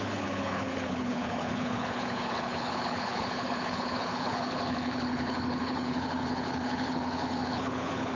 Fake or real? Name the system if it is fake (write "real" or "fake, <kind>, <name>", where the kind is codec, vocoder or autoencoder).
fake, codec, HILCodec